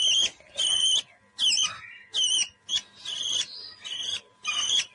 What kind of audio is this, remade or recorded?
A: recorded